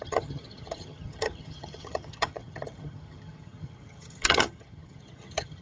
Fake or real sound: fake